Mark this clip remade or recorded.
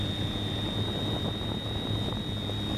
recorded